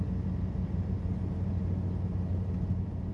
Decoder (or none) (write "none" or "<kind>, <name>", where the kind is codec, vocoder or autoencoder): none